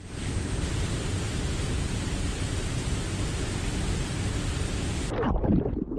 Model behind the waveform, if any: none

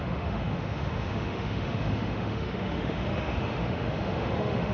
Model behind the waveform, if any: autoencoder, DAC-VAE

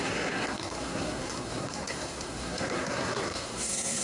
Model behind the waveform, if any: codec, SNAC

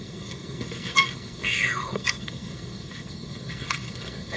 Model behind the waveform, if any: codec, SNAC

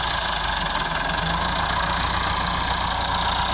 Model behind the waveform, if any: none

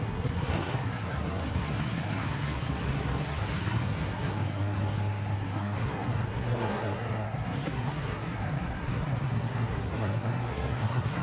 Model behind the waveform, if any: codec, SNAC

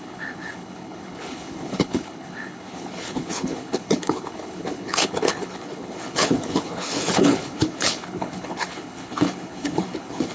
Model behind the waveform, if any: codec, HILCodec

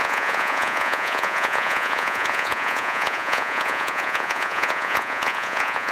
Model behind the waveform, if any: vocoder, Vocos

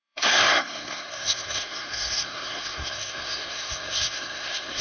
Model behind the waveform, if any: codec, SNAC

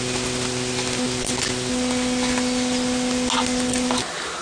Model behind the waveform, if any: none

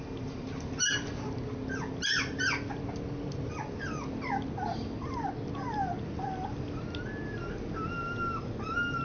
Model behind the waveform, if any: none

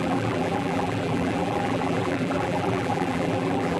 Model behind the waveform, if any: vocoder, BigVGAN v2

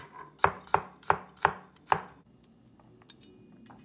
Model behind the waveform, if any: none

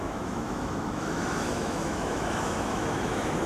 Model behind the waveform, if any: autoencoder, DAC-VAE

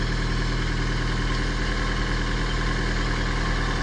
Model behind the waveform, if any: none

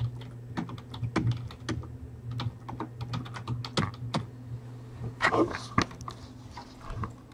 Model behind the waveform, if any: none